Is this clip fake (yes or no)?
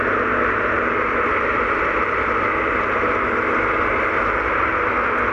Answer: no